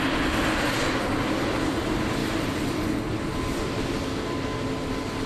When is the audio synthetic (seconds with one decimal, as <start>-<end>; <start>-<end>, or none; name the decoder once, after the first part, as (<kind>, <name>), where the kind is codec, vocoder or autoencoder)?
none